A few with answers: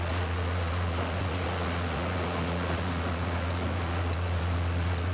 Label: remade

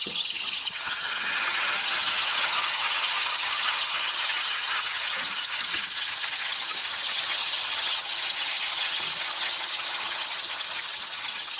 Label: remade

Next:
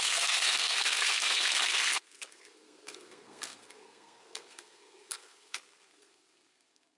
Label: remade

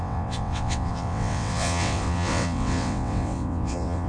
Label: remade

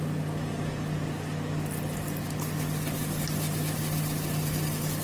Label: recorded